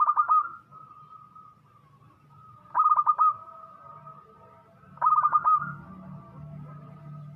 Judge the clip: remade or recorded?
recorded